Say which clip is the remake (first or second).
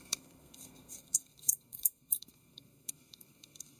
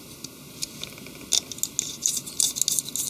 first